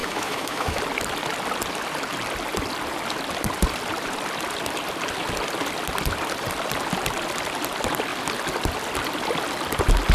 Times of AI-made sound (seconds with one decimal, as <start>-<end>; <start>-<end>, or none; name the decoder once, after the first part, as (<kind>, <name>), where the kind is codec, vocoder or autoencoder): 0.0-0.8 (autoencoder, DAC-VAE)